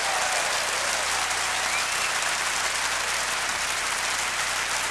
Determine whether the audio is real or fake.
real